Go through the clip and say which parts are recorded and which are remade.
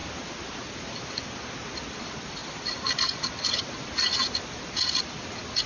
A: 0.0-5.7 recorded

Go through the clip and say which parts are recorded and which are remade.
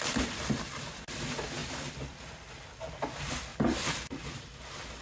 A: 0.0-1.6 recorded; 1.6-2.5 remade; 2.5-5.0 recorded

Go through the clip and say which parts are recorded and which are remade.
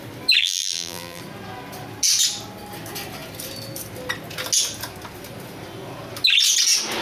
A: 0.0-0.4 recorded; 0.4-1.2 remade; 1.2-7.0 recorded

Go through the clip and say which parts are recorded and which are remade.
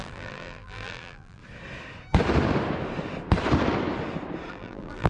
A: 0.0-1.4 remade; 1.4-4.5 recorded; 4.5-5.1 remade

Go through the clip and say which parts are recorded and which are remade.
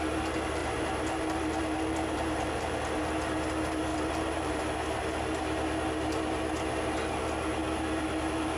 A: 0.0-0.6 recorded; 0.6-3.1 remade; 3.1-3.9 recorded; 3.9-4.6 remade; 4.6-8.6 recorded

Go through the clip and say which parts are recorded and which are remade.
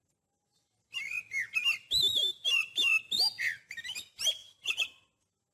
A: 0.0-2.1 recorded; 2.1-2.9 remade; 2.9-4.4 recorded; 4.4-4.9 remade; 4.9-5.5 recorded